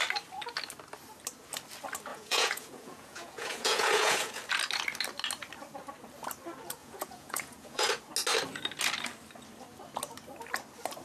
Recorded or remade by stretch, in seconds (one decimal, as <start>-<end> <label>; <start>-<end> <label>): 0.0-2.1 recorded; 2.1-4.4 remade; 4.4-6.8 recorded; 6.8-7.9 remade; 7.9-11.0 recorded